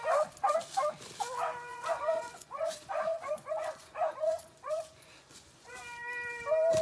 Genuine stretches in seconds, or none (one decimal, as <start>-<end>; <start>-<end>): 0.0-1.7; 5.8-6.8

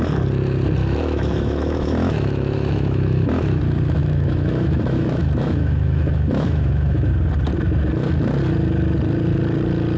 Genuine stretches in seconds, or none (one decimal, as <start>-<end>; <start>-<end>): 0.0-0.8; 3.6-4.0; 7.1-10.0

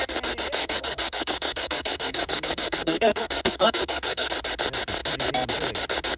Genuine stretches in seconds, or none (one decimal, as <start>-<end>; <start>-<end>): 0.0-0.6; 4.3-6.2

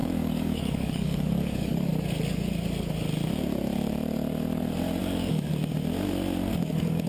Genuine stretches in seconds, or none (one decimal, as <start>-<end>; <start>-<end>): 1.9-5.0; 5.5-6.5

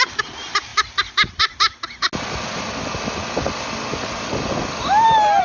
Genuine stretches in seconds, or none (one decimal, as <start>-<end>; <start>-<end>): 0.0-0.7; 2.7-5.4

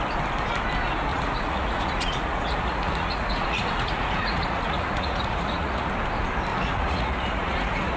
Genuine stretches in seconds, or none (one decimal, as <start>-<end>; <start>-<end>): 0.0-1.1; 5.9-6.5

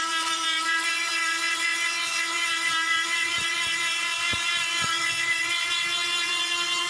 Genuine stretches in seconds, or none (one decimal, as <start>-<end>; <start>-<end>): none

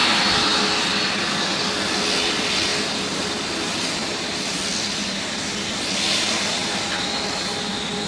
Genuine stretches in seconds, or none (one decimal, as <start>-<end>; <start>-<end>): 0.0-8.1